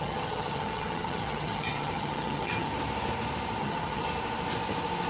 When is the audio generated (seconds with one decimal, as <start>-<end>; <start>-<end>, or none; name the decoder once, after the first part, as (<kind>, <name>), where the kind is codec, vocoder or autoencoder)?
0.0-2.7 (vocoder, HiFi-GAN); 3.6-4.1